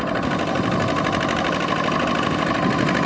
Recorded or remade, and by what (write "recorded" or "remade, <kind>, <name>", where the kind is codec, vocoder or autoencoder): recorded